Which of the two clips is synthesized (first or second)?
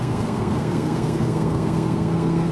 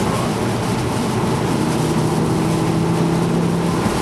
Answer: first